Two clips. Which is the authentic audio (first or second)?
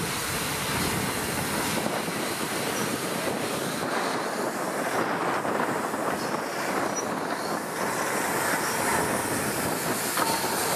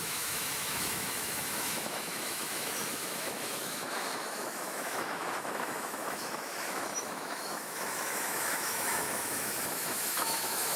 first